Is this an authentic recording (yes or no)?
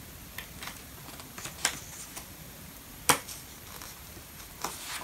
yes